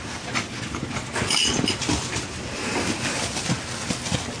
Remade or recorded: recorded